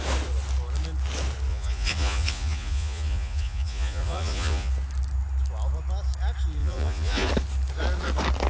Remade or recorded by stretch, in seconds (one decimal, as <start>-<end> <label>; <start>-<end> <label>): 0.0-1.5 recorded; 1.5-4.7 remade; 4.7-6.6 recorded; 6.6-7.3 remade; 7.3-8.5 recorded